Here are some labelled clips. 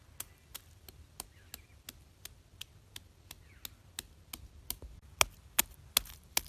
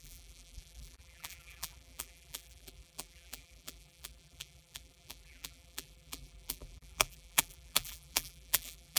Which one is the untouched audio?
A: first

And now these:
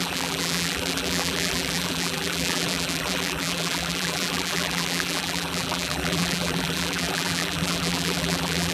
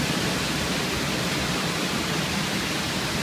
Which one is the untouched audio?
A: second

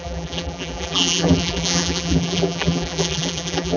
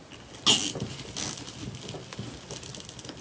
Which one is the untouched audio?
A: second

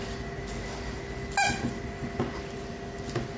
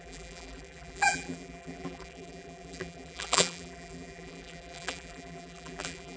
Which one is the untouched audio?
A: first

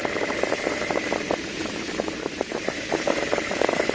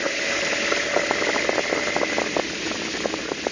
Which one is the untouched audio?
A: second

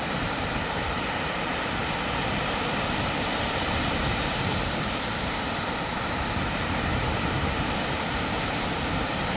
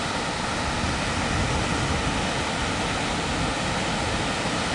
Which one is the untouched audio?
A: second